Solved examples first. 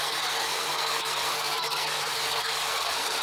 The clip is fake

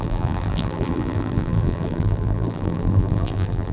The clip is fake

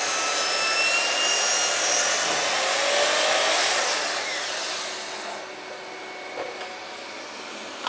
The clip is real